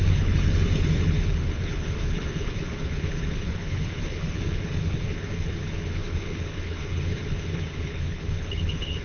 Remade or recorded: remade